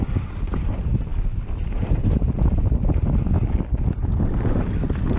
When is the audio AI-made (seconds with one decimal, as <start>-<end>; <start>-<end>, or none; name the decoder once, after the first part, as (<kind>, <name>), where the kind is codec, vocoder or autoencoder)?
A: none